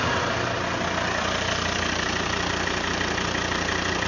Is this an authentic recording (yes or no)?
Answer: yes